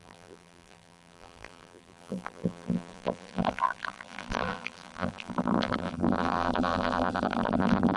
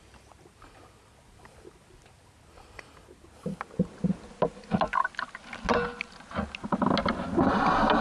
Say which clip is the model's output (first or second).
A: first